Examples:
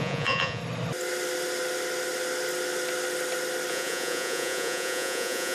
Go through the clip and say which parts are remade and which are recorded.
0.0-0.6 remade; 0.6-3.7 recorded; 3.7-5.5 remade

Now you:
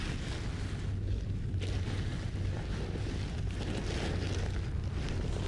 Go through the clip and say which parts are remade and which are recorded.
0.0-5.5 recorded

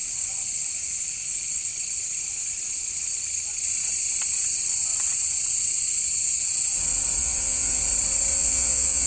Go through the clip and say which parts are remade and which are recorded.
0.0-7.2 recorded; 7.2-7.8 remade; 7.8-8.3 recorded; 8.3-9.1 remade

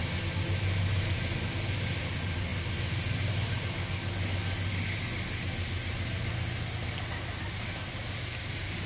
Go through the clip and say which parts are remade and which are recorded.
0.0-8.9 recorded

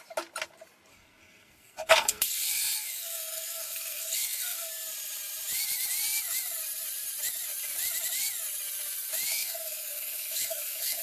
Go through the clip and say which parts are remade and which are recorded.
0.0-0.9 recorded; 0.9-4.7 remade; 4.7-9.3 recorded; 9.3-11.0 remade

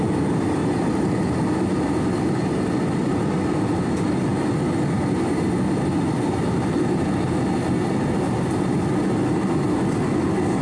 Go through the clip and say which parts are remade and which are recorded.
0.0-10.6 recorded

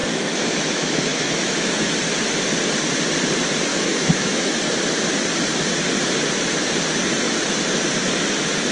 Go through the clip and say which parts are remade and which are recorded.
0.0-1.8 remade; 1.8-3.7 recorded; 3.7-4.6 remade; 4.6-8.7 recorded